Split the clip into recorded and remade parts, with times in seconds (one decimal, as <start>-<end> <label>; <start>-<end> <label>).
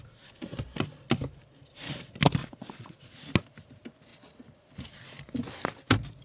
0.0-2.4 recorded; 2.4-3.1 remade; 3.1-6.2 recorded